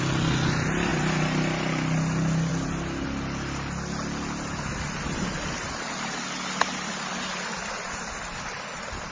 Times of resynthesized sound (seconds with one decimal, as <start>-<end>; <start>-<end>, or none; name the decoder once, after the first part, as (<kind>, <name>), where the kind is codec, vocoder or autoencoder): none